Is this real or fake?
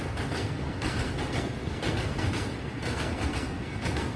fake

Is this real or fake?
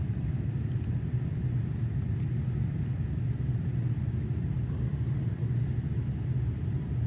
real